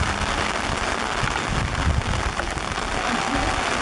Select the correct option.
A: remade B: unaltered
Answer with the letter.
B